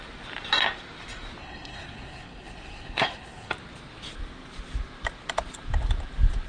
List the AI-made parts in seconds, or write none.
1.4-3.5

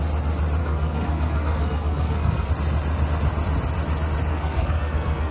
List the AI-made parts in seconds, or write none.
0.6-2.5; 4.3-5.3

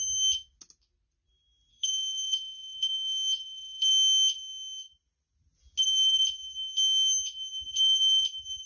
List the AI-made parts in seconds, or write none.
1.7-3.9

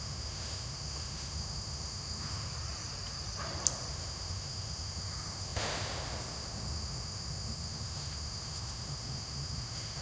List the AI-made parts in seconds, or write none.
0.0-2.5; 3.9-10.0

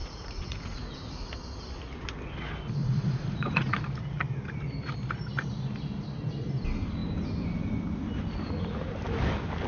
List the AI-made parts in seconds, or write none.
0.0-1.3; 2.8-3.8

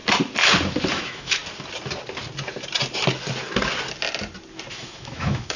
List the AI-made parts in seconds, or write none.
0.9-1.4; 4.7-5.6